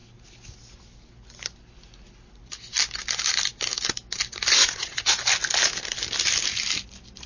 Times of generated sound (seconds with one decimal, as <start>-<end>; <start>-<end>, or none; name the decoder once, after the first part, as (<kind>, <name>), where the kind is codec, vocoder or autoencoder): 4.6-5.2 (vocoder, Vocos)